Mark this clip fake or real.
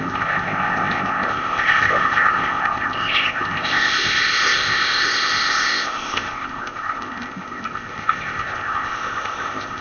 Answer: fake